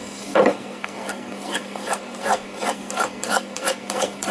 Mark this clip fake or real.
fake